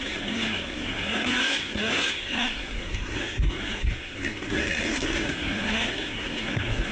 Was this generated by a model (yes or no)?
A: yes